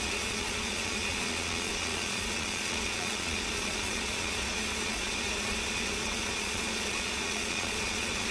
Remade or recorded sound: remade